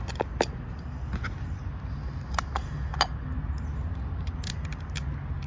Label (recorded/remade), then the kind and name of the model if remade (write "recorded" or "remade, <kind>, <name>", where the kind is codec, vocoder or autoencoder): recorded